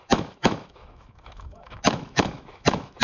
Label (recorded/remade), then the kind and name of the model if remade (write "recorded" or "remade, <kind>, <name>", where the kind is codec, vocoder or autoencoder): remade, autoencoder, DAC-VAE